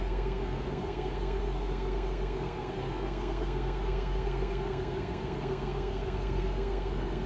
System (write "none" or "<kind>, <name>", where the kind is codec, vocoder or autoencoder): codec, SNAC